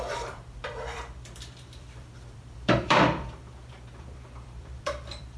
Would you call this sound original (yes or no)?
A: no